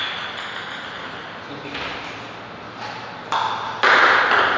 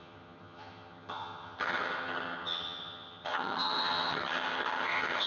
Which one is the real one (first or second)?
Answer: first